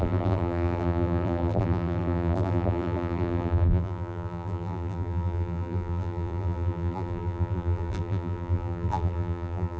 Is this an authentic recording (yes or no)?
no